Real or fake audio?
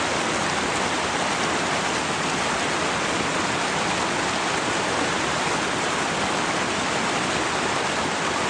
real